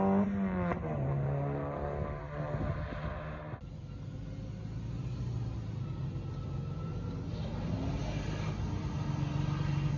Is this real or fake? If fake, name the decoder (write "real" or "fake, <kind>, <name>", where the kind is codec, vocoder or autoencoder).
real